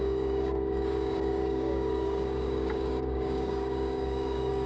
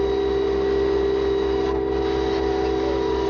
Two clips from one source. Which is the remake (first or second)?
first